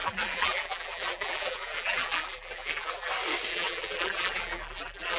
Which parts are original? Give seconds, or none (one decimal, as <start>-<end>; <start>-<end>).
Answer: 3.1-3.5